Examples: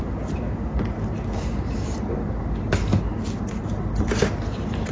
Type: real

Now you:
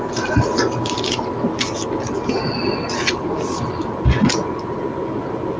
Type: real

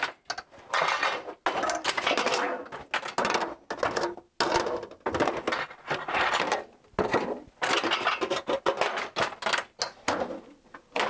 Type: real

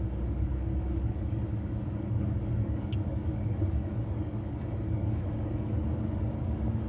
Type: fake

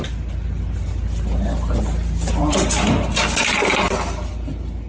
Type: real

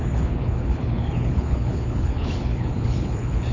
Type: fake